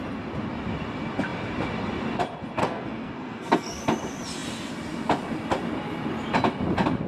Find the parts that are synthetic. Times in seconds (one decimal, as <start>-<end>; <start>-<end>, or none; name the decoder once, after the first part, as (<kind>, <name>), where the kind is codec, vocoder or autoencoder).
2.6-3.8 (codec, SNAC)

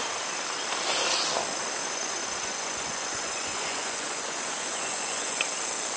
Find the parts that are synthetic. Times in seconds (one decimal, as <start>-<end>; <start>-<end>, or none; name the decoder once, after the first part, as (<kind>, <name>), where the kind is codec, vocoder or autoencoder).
1.8-5.4 (vocoder, Vocos)

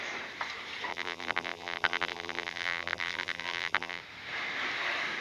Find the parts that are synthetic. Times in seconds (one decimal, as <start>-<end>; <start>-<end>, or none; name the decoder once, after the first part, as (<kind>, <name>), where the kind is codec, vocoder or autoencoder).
0.9-4.0 (vocoder, BigVGAN v2)